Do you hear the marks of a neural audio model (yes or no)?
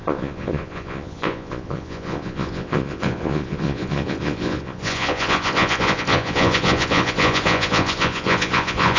yes